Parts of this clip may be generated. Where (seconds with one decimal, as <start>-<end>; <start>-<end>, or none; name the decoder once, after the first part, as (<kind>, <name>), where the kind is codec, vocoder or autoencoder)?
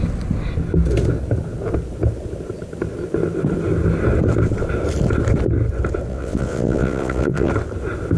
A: 6.1-7.5 (vocoder, WaveNeXt)